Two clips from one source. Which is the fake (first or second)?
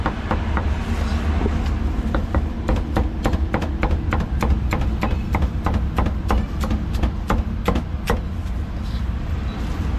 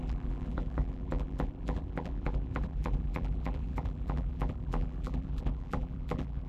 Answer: second